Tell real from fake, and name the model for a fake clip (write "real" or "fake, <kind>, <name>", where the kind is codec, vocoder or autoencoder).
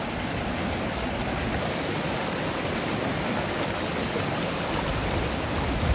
real